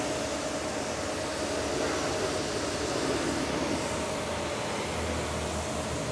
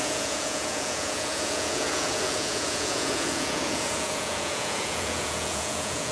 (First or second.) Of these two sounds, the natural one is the first